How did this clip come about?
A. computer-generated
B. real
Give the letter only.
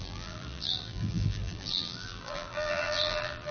A